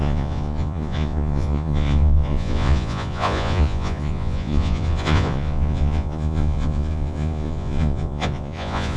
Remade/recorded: remade